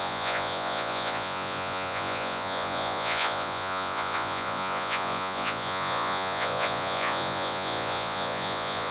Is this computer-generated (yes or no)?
yes